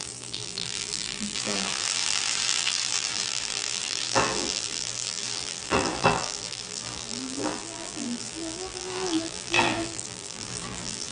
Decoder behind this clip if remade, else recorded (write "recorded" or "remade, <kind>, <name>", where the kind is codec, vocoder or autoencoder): remade, vocoder, BigVGAN v2